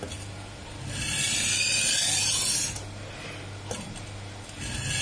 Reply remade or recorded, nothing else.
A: recorded